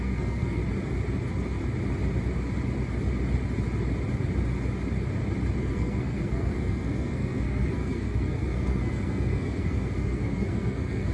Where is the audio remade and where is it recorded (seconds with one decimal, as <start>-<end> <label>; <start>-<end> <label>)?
0.0-0.6 remade; 0.6-5.6 recorded; 5.6-11.1 remade